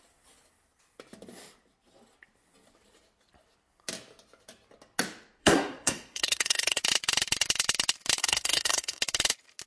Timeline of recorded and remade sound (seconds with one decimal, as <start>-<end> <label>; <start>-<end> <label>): 0.0-5.4 recorded; 5.4-6.8 remade; 6.8-8.2 recorded; 8.2-9.0 remade; 9.0-9.7 recorded